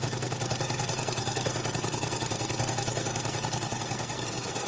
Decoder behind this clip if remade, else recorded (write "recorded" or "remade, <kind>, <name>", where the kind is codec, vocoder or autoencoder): remade, codec, SNAC